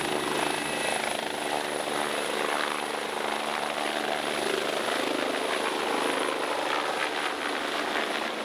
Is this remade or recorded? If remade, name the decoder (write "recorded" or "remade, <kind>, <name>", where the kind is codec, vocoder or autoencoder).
recorded